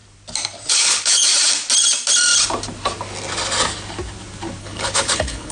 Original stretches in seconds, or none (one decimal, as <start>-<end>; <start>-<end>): 0.0-0.7; 1.3-4.6